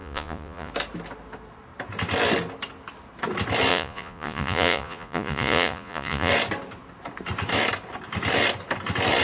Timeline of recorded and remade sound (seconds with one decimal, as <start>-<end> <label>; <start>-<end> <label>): 0.0-0.7 remade; 0.7-3.7 recorded; 3.7-6.3 remade; 6.3-9.2 recorded

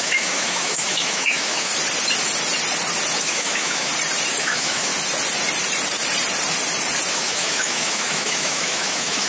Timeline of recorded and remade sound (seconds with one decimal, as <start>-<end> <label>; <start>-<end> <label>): 0.0-1.7 remade; 1.7-3.2 recorded; 3.2-3.9 remade; 3.9-4.4 recorded; 4.4-4.9 remade; 4.9-7.1 recorded; 7.1-9.3 remade

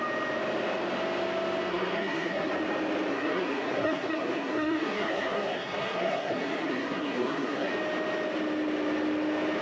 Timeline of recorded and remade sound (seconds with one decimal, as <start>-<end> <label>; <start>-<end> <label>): 0.0-1.7 recorded; 1.7-2.5 remade; 2.5-3.1 recorded; 3.1-7.7 remade; 7.7-9.6 recorded

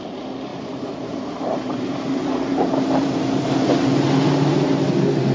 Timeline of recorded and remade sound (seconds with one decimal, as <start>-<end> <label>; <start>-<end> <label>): 0.0-0.5 recorded; 0.5-3.2 remade; 3.2-5.3 recorded